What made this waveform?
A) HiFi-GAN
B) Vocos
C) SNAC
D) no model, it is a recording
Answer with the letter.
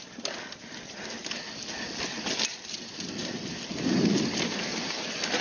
D